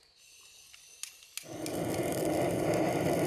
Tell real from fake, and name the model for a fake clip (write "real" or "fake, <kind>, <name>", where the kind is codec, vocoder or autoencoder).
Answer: real